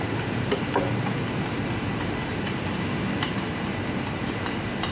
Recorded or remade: remade